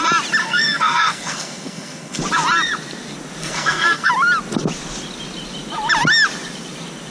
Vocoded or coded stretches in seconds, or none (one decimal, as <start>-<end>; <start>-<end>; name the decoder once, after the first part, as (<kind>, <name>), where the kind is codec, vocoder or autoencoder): 0.4-2.2 (codec, SNAC); 3.4-4.1